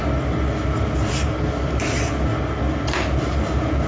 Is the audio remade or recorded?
recorded